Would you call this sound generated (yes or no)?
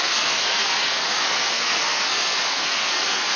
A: yes